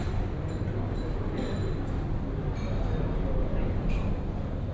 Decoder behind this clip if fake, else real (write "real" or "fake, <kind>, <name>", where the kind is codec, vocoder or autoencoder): real